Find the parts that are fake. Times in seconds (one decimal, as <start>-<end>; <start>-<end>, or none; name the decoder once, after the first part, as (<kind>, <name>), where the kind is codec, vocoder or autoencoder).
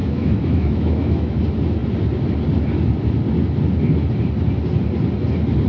0.0-1.4 (autoencoder, DAC-VAE)